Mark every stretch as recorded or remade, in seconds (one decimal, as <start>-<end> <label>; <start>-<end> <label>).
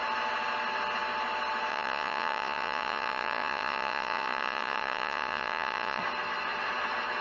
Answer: 0.0-1.7 recorded; 1.7-6.0 remade; 6.0-7.2 recorded